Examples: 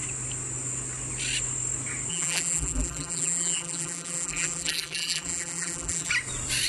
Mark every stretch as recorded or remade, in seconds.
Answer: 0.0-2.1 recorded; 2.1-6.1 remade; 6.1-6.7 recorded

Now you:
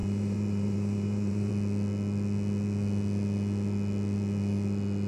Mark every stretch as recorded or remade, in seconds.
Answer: 0.0-1.5 remade; 1.5-5.1 recorded

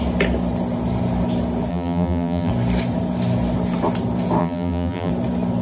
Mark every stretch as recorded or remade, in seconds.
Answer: 0.0-1.7 recorded; 1.7-2.5 remade; 2.5-4.4 recorded; 4.4-5.1 remade; 5.1-5.6 recorded

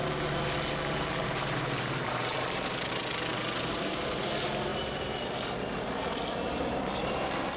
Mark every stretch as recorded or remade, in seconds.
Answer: 0.0-1.1 recorded; 1.1-2.9 remade; 2.9-4.7 recorded; 4.7-5.5 remade; 5.5-7.6 recorded

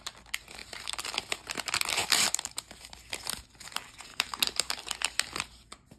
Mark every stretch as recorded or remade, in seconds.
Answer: 0.0-0.6 recorded; 0.6-1.1 remade; 1.1-2.0 recorded; 2.0-2.8 remade; 2.8-4.1 recorded; 4.1-4.7 remade; 4.7-6.0 recorded